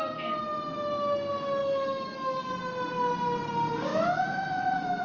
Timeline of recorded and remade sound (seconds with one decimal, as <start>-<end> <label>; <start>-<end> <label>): 0.0-1.6 recorded; 1.6-2.5 remade; 2.5-3.9 recorded; 3.9-5.0 remade